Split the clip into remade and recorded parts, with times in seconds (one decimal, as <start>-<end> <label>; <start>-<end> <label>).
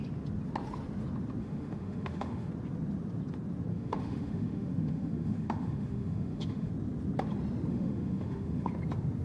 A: 0.0-1.4 recorded; 1.4-2.5 remade; 2.5-3.7 recorded; 3.7-6.7 remade; 6.7-7.7 recorded; 7.7-8.7 remade; 8.7-9.2 recorded